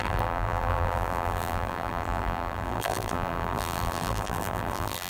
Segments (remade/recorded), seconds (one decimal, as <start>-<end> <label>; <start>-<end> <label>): 0.0-5.1 remade